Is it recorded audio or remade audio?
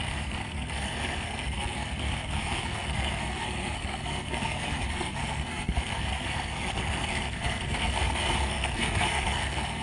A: remade